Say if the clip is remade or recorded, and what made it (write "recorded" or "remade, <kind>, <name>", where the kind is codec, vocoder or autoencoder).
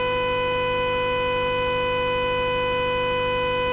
recorded